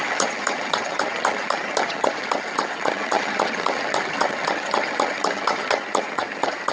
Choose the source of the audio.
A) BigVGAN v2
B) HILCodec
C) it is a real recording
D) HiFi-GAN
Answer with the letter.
D